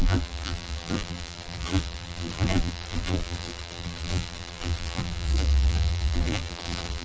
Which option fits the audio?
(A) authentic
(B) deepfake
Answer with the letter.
B